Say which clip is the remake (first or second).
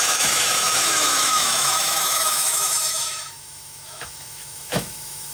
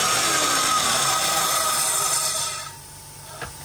first